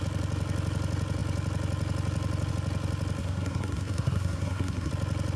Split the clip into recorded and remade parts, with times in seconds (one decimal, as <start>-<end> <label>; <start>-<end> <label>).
0.0-3.2 recorded; 3.2-4.9 remade; 4.9-5.4 recorded